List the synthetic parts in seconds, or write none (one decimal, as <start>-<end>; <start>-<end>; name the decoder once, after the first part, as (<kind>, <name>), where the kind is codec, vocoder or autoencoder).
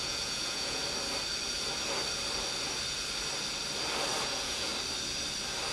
0.0-0.8 (vocoder, Vocos); 4.2-4.7